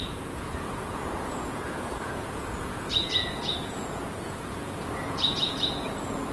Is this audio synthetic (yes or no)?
yes